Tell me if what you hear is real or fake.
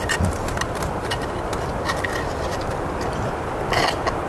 real